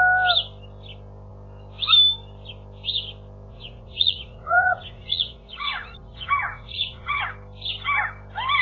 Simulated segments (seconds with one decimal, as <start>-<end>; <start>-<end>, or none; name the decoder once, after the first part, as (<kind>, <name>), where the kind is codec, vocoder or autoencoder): 3.5-7.2 (vocoder, Vocos)